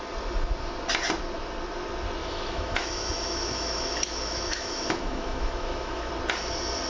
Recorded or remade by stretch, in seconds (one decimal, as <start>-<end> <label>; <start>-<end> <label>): 0.0-2.2 recorded; 2.2-6.1 remade; 6.1-6.9 recorded